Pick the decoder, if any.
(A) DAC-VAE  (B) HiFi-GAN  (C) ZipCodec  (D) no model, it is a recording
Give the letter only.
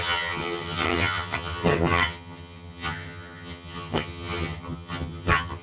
B